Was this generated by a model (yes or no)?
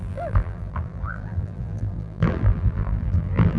yes